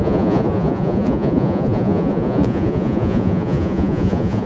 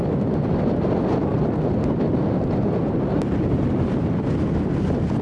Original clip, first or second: second